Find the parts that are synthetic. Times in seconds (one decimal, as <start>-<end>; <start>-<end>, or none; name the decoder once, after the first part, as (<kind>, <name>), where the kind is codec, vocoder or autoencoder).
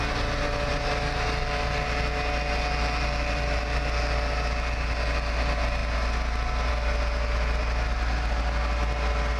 none